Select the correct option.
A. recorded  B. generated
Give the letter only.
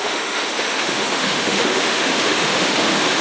B